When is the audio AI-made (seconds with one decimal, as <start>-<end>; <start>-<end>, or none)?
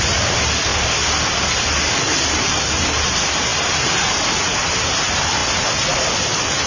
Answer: 0.0-0.7; 1.9-3.5; 4.9-5.4; 6.2-6.7